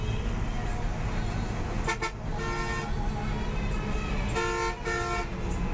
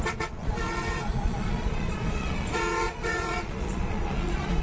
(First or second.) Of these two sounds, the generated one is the second